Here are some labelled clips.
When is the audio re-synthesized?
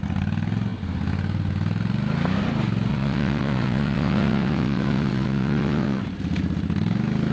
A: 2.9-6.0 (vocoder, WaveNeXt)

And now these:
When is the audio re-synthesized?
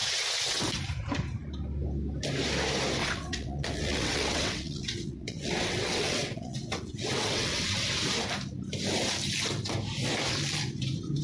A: 0.0-0.6 (vocoder, WaveNeXt); 3.0-7.8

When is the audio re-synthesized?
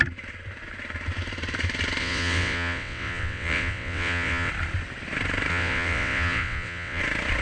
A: 2.0-4.5 (vocoder, WaveNeXt); 5.5-7.0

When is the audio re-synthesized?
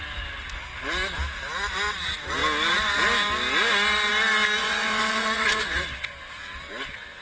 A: 4.6-6.1 (vocoder, WaveNeXt)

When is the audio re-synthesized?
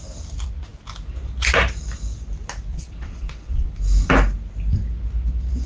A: 2.7-3.8 (vocoder, WaveNeXt)